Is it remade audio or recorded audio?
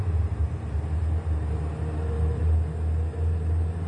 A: recorded